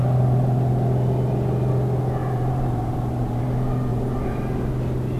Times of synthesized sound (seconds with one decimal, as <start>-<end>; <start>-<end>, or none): 2.2-3.4; 3.9-4.7